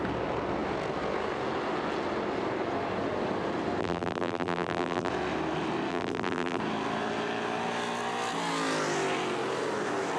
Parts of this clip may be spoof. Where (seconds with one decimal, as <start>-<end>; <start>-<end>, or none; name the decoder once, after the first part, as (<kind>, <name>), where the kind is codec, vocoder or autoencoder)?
3.8-5.1 (vocoder, BigVGAN v2); 5.9-6.6